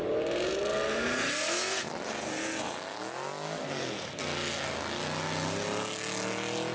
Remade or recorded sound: recorded